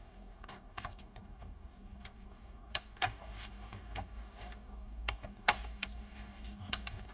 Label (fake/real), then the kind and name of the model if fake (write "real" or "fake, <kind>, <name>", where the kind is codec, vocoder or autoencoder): fake, codec, DAC